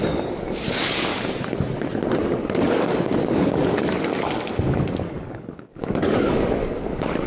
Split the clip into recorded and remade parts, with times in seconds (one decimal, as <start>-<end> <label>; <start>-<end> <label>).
0.0-1.1 remade; 1.1-2.4 recorded; 2.4-7.3 remade